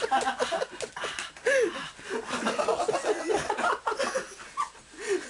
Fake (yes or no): no